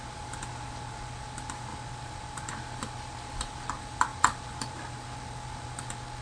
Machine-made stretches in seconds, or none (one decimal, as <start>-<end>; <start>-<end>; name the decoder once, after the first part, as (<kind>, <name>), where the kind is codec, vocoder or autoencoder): none